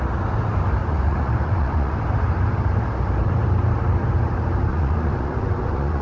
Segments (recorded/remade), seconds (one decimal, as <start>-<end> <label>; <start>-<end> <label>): 0.0-0.8 recorded; 0.8-2.0 remade; 2.0-4.7 recorded; 4.7-6.0 remade